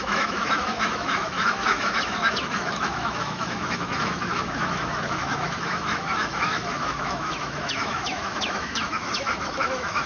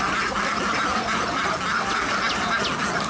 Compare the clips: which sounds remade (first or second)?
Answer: first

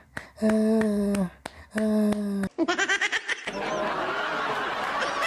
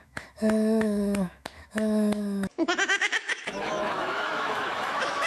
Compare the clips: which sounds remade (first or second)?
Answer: second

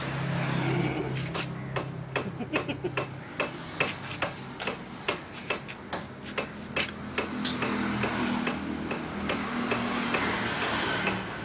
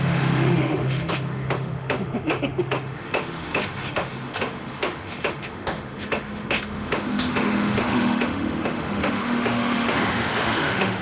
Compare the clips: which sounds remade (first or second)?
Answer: second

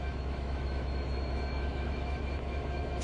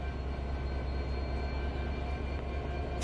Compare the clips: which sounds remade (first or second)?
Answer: first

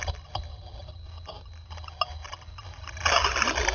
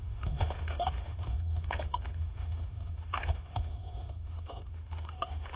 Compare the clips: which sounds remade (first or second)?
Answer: second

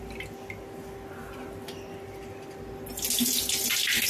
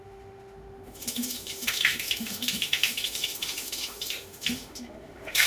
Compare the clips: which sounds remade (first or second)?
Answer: second